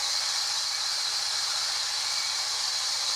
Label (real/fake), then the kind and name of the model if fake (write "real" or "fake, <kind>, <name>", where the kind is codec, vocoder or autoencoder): fake, vocoder, BigVGAN v2